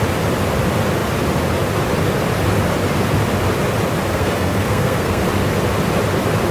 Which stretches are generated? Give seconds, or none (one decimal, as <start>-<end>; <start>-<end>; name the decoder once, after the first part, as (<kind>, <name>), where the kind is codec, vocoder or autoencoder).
4.1-5.2 (codec, SNAC)